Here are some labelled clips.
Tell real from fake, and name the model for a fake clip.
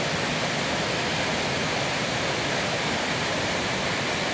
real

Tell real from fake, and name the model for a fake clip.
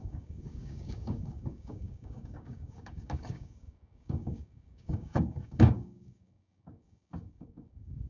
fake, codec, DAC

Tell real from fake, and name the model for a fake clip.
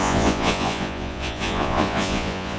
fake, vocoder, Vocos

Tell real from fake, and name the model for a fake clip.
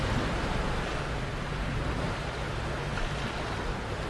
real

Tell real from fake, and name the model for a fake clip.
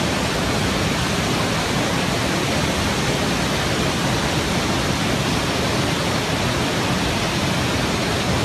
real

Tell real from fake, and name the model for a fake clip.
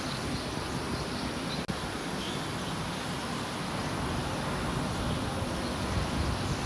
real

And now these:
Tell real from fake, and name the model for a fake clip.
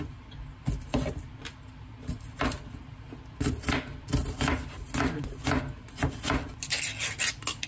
real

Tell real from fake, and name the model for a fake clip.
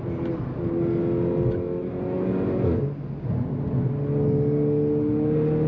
real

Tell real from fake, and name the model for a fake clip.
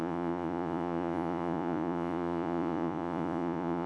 fake, vocoder, Vocos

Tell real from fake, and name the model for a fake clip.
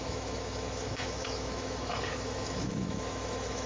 fake, autoencoder, DAC-VAE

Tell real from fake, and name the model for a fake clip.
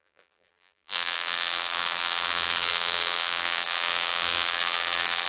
fake, vocoder, BigVGAN v2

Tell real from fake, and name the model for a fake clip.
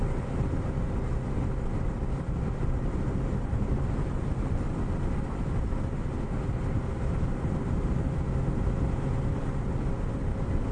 real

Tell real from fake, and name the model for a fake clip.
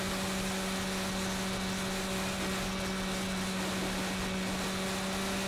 real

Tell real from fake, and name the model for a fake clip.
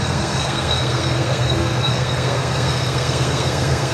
fake, codec, SNAC